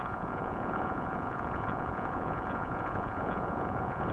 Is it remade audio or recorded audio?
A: remade